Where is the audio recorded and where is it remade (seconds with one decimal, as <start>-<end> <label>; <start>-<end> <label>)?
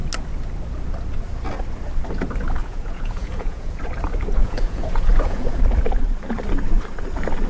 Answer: 0.0-2.6 recorded; 2.6-3.8 remade; 3.8-4.4 recorded; 4.4-5.6 remade; 5.6-7.5 recorded